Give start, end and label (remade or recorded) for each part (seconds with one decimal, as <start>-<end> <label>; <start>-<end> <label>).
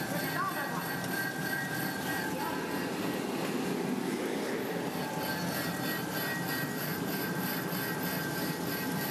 0.0-6.9 recorded; 6.9-7.6 remade; 7.6-9.1 recorded